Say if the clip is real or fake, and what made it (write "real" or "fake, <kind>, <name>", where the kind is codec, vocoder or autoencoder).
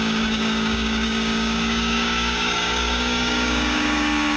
fake, codec, DAC